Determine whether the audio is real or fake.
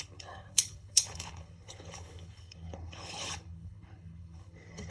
fake